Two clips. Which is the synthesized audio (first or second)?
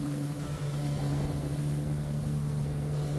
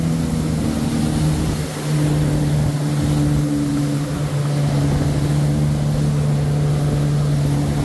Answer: first